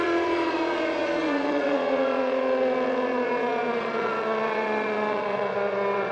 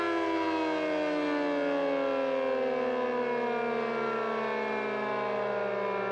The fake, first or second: first